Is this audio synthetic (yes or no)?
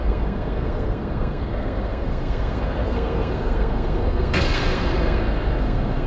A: yes